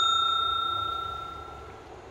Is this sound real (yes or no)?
yes